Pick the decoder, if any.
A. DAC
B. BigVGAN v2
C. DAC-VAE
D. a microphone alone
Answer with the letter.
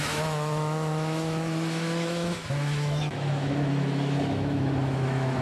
C